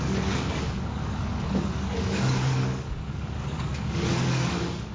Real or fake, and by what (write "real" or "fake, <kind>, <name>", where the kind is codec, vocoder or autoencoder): fake, codec, DAC